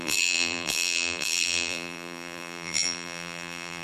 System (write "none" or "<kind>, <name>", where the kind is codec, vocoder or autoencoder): vocoder, BigVGAN v2